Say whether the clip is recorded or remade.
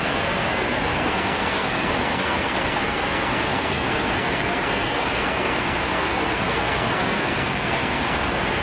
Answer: remade